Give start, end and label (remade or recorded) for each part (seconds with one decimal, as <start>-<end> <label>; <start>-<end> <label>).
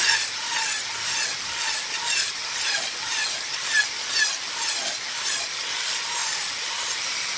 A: 0.0-7.4 recorded